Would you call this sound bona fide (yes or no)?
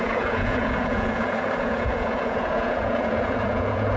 no